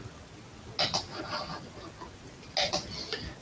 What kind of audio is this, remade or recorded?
recorded